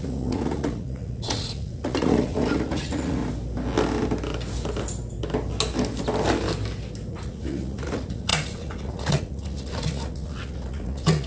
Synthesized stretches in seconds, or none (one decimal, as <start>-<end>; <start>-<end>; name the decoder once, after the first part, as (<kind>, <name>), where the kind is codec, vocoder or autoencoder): 0.0-3.2 (vocoder, Vocos); 7.1-11.3